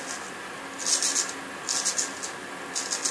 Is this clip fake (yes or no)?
no